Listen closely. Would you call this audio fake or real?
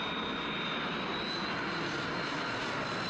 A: fake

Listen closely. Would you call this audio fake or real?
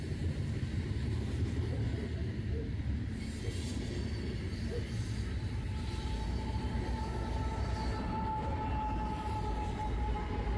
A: fake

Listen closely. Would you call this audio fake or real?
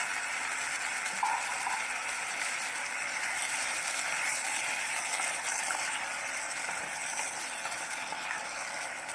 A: real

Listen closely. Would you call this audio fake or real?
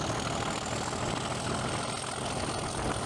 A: real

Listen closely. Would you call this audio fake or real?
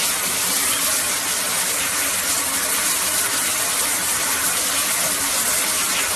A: real